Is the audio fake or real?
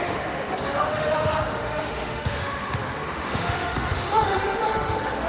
fake